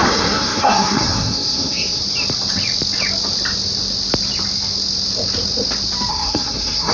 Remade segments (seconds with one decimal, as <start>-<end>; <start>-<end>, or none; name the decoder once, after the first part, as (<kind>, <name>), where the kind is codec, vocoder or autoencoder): 0.0-2.0 (codec, SNAC); 6.1-6.9